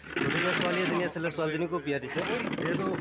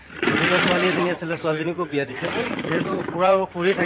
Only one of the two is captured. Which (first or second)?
first